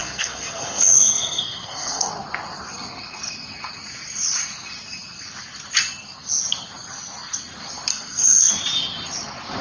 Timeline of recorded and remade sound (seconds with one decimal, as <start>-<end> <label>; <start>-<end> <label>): 0.0-2.1 remade; 2.1-7.9 recorded; 7.9-8.5 remade; 8.5-9.6 recorded